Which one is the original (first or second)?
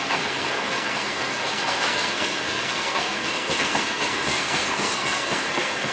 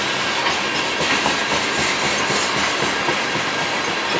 second